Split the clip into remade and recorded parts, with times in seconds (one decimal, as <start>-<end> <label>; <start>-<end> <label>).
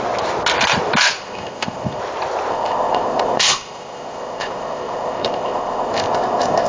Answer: 0.0-1.2 recorded; 1.2-2.0 remade; 2.0-2.5 recorded; 2.5-6.7 remade